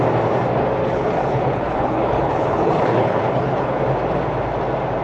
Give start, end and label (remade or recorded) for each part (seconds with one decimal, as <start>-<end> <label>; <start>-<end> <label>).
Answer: 0.0-0.8 recorded; 0.8-3.8 remade; 3.8-5.0 recorded